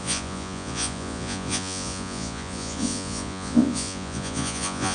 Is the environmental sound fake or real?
fake